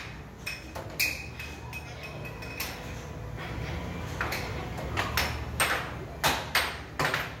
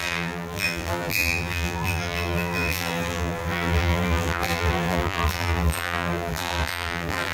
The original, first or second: first